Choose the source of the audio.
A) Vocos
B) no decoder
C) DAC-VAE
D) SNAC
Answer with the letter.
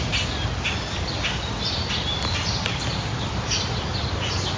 B